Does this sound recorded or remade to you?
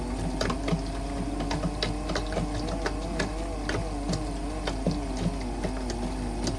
recorded